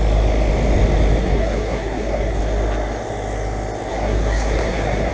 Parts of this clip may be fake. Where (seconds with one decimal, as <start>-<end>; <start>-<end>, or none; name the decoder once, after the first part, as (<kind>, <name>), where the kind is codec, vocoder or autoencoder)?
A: 1.2-2.4 (codec, SNAC); 3.9-5.1